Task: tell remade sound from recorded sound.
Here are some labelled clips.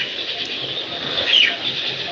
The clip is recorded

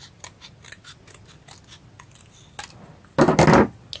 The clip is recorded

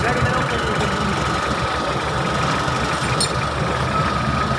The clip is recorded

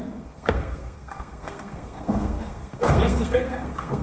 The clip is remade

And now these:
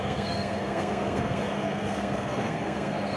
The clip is remade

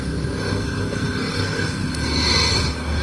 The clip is remade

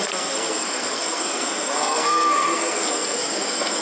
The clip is remade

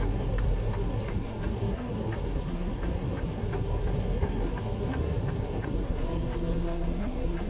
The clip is remade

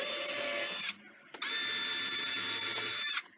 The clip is recorded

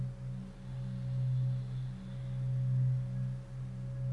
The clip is recorded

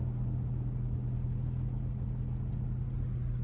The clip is recorded